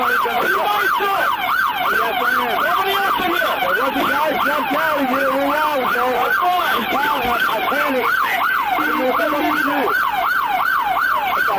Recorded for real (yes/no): yes